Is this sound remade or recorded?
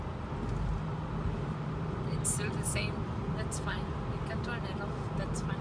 recorded